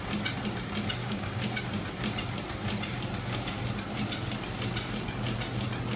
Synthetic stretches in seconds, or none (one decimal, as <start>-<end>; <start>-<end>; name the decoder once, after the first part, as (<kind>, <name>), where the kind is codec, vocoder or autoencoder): 1.0-1.6 (codec, DAC)